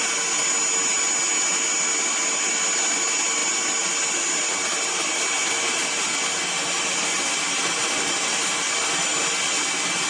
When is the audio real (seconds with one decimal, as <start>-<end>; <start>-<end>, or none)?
0.0-10.1